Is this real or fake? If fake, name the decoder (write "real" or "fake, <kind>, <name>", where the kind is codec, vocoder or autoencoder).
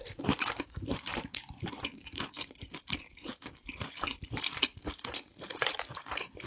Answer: fake, vocoder, BigVGAN v2